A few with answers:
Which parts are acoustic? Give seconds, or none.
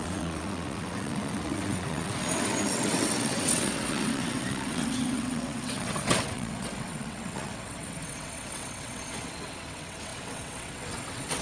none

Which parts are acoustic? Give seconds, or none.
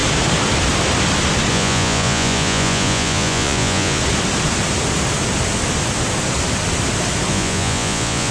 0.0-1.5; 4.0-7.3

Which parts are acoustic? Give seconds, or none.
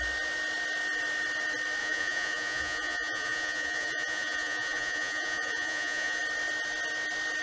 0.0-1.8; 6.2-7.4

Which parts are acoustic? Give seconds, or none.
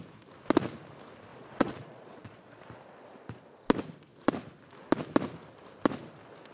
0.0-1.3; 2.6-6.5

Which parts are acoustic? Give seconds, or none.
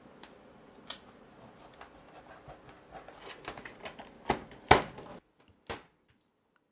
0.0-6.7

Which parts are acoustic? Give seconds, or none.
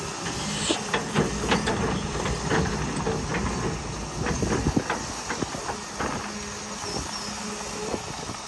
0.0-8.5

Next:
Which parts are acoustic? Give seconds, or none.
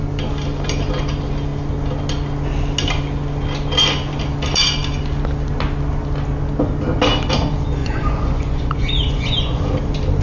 0.0-7.8; 9.6-10.2